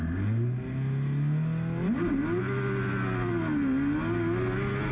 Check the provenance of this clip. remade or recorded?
recorded